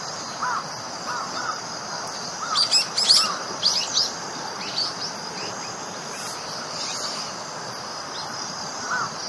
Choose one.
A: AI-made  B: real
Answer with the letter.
B